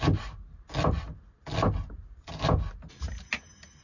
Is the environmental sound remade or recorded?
recorded